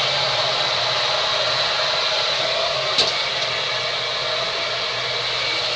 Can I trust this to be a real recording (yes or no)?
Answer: yes